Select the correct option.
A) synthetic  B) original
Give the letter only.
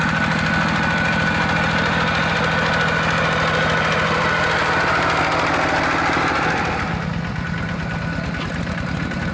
B